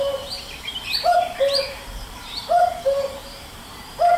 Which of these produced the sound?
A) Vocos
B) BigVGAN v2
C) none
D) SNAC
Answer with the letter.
B